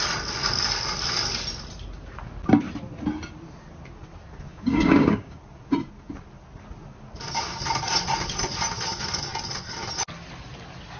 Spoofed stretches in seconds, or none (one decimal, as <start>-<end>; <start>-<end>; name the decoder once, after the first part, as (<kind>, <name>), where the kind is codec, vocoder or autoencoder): 4.5-5.4 (codec, DAC)